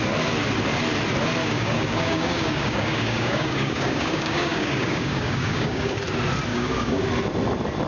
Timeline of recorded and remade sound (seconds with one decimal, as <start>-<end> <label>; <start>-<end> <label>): 0.0-1.4 recorded; 1.4-5.9 remade; 5.9-6.5 recorded; 6.5-7.0 remade; 7.0-7.9 recorded